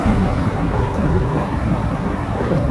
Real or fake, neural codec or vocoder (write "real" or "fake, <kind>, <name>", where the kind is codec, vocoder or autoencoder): fake, codec, SNAC